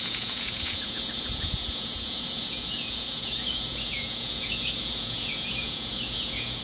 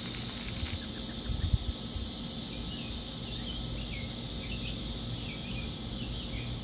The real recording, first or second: second